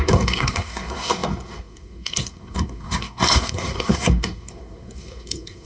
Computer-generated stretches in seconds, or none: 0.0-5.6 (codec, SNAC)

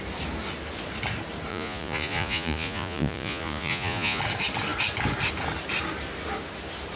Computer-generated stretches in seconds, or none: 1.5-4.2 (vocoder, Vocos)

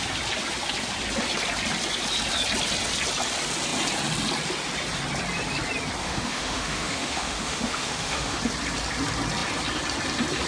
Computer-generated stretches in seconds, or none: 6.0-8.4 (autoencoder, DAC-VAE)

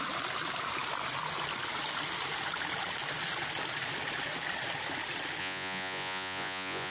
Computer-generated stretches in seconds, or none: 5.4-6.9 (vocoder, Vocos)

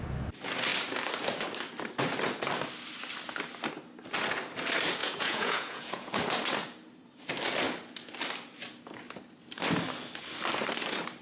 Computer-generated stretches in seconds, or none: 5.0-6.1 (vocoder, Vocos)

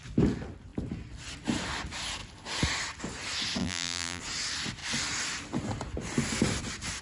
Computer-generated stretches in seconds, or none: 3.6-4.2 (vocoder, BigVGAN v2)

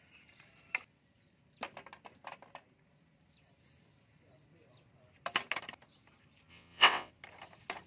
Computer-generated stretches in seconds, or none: 6.5-7.1 (vocoder, WaveNeXt)

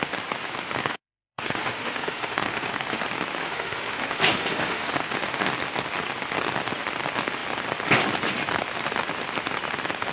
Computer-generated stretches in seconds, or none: 0.8-3.0 (autoencoder, DAC-VAE); 3.4-5.5